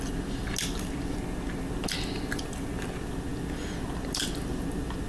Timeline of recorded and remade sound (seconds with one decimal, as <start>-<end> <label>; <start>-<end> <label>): 0.0-5.1 recorded